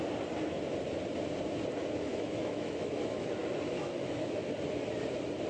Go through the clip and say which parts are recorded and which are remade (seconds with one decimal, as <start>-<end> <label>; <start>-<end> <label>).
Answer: 0.0-2.1 recorded; 2.1-4.5 remade; 4.5-5.5 recorded